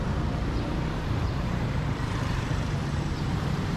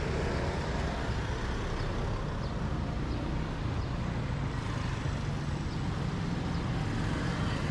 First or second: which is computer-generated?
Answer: first